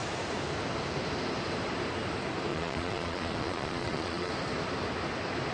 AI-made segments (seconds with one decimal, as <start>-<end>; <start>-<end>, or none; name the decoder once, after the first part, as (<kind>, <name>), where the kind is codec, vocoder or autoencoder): 2.5-4.3 (vocoder, Vocos)